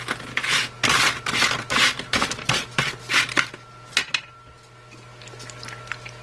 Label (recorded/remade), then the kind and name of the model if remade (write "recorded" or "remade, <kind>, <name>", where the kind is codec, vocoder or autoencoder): recorded